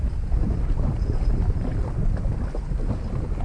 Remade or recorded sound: recorded